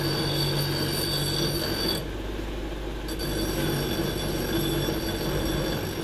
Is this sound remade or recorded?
recorded